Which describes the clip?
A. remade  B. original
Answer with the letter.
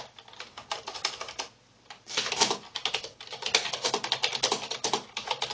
B